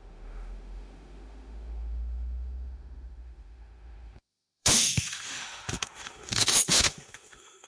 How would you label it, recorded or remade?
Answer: remade